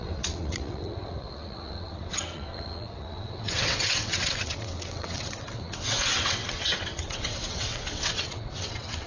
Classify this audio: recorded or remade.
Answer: remade